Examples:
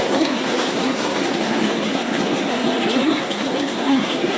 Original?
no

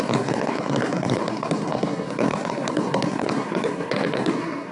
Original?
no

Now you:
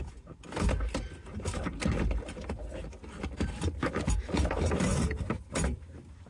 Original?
yes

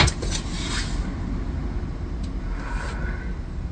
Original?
yes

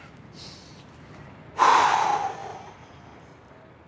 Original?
yes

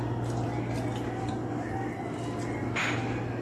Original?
yes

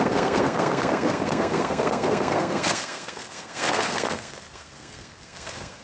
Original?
no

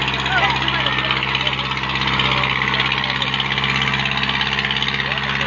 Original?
yes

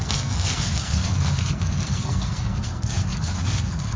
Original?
no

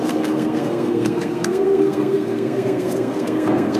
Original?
no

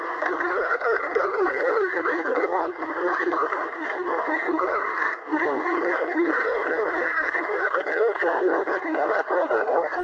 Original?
no